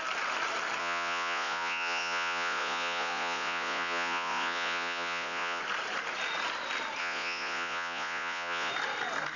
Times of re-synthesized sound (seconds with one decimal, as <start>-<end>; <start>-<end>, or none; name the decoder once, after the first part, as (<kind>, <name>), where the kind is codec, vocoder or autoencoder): 0.8-5.6 (vocoder, Vocos); 7.0-8.7